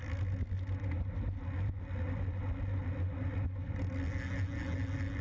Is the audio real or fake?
real